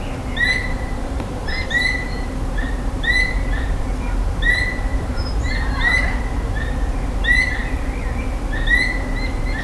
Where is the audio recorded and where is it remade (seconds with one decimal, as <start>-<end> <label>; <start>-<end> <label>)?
0.0-0.6 recorded; 0.6-3.9 remade; 3.9-4.9 recorded; 4.9-6.2 remade; 6.2-9.6 recorded